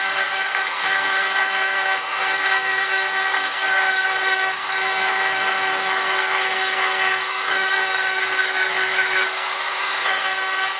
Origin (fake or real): fake